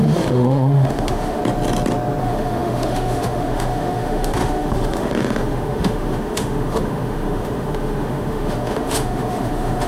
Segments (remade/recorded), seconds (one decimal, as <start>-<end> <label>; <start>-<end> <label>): 0.0-1.4 remade; 1.4-2.2 recorded; 2.2-9.9 remade